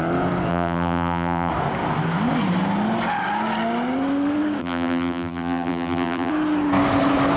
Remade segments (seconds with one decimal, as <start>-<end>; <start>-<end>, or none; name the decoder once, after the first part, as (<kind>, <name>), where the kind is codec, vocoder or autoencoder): 0.5-1.5 (vocoder, BigVGAN v2); 4.6-6.3